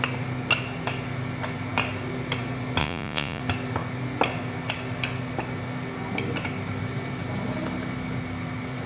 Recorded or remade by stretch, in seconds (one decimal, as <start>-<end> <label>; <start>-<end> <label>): 0.0-2.8 recorded; 2.8-3.4 remade; 3.4-8.9 recorded